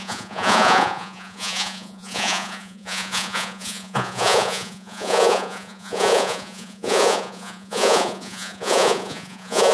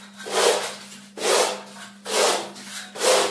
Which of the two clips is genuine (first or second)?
second